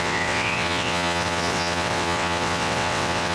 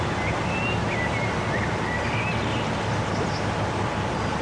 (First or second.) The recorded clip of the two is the second